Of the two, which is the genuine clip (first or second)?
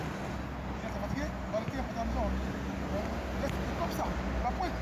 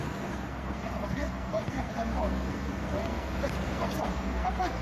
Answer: first